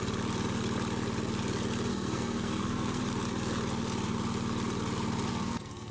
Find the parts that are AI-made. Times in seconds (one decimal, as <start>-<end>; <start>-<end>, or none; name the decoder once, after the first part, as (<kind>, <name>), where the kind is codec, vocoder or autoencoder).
1.9-3.0 (codec, SNAC); 5.3-5.9